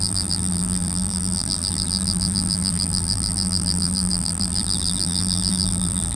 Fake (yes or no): yes